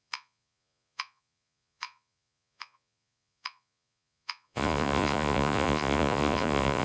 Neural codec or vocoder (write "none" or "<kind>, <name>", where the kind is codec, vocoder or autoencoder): vocoder, Vocos